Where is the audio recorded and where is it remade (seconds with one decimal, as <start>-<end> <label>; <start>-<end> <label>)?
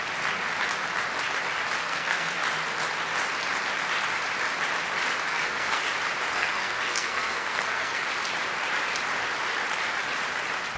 0.0-1.8 recorded; 1.8-2.4 remade; 2.4-5.3 recorded; 5.3-5.8 remade; 5.8-6.3 recorded; 6.3-8.0 remade; 8.0-10.8 recorded